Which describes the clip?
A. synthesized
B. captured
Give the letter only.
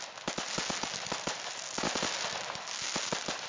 B